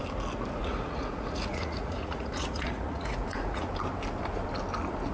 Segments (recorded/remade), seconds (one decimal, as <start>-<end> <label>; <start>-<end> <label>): 0.0-0.6 recorded; 0.6-3.7 remade; 3.7-5.1 recorded